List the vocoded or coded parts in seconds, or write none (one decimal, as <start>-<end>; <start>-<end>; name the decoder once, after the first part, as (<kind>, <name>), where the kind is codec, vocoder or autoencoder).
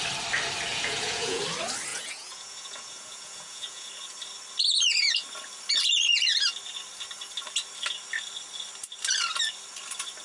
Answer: 0.7-1.4 (vocoder, Vocos); 1.9-3.9